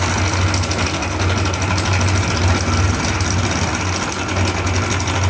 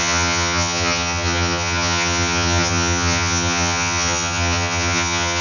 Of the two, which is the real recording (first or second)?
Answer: first